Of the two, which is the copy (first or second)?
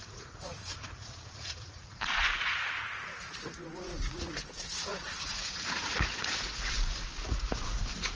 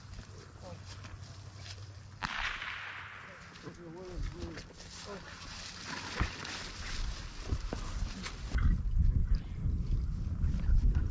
first